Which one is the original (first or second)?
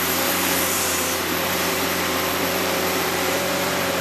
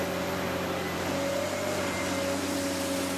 second